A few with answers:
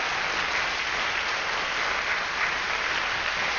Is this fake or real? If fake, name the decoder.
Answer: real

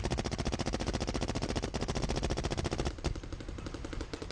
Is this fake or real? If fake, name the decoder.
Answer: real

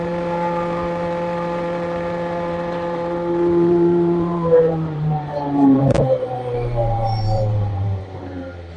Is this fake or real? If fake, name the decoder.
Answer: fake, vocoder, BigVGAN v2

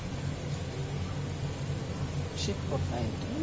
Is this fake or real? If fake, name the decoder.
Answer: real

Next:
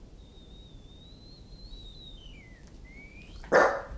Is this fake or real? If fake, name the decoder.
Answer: real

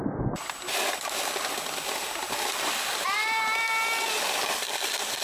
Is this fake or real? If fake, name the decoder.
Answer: real